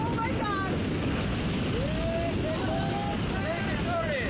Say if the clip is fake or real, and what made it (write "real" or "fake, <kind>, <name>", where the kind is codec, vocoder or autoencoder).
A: real